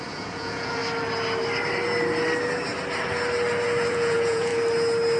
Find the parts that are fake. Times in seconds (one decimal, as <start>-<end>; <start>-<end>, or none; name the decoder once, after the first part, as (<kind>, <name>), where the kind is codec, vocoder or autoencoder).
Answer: 0.0-0.8 (vocoder, Vocos); 3.9-4.5

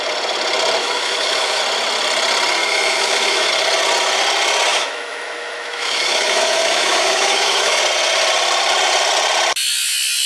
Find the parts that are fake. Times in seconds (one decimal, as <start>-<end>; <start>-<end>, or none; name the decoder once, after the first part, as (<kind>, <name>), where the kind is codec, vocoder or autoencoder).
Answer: 0.8-1.6 (autoencoder, DAC-VAE); 2.6-3.5; 4.7-7.8